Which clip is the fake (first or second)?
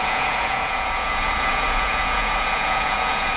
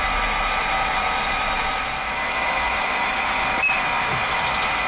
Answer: first